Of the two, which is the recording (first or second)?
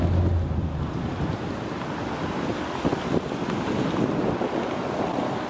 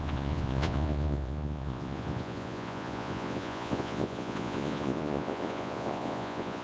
first